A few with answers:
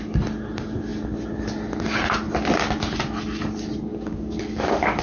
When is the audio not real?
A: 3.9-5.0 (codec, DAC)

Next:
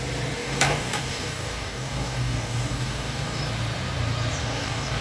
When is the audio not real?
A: 0.4-3.4 (codec, DAC); 4.4-5.0

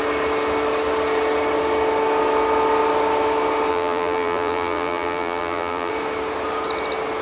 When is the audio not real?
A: 3.7-5.9 (vocoder, BigVGAN v2)

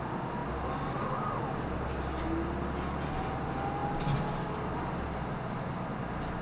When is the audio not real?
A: none

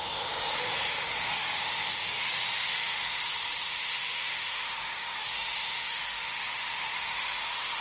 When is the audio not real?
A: 0.0-3.2 (autoencoder, DAC-VAE); 3.7-7.8

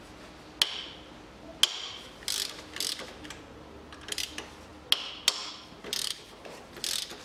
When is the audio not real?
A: 6.0-6.7 (vocoder, BigVGAN v2)

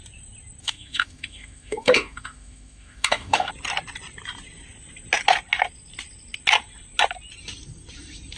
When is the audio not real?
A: 0.6-3.5 (autoencoder, DAC-VAE)

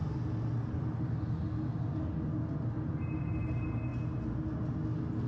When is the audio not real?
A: none